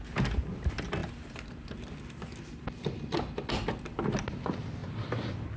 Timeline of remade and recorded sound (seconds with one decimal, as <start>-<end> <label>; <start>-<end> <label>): 0.0-5.6 recorded